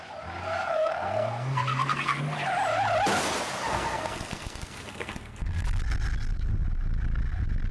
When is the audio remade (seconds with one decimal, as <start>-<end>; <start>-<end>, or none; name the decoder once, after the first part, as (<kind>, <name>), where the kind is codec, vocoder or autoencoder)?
0.4-2.2 (codec, SNAC); 3.7-5.8